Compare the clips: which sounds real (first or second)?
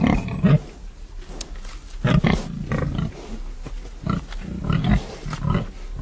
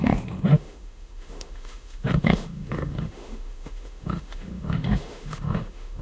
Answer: first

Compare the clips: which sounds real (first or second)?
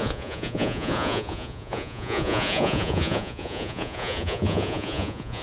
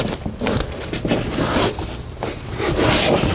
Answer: second